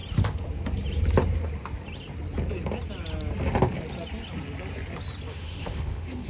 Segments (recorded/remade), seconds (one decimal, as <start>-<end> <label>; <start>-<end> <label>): 0.0-5.3 recorded; 5.3-6.3 remade